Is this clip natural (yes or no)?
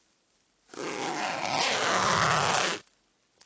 yes